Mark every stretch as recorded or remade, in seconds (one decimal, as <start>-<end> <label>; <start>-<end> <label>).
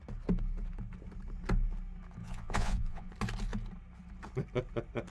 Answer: 0.0-2.2 recorded; 2.2-3.1 remade; 3.1-5.1 recorded